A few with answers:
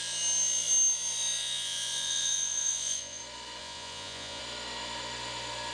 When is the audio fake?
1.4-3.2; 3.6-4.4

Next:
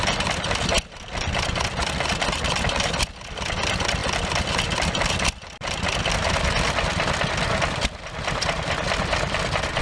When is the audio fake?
none

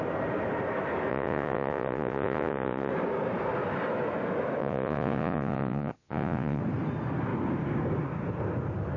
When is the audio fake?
1.1-2.9; 4.6-6.6

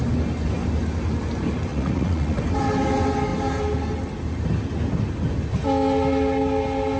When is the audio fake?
1.7-2.4

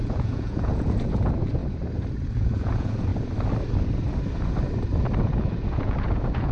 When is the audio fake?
0.0-1.6; 2.3-3.1; 5.2-6.5

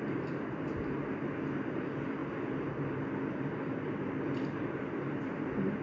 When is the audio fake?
none

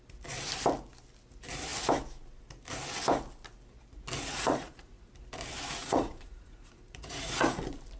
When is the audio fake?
4.3-5.1; 5.8-7.6

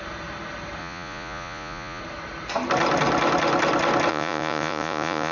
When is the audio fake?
0.8-2.0; 4.1-5.3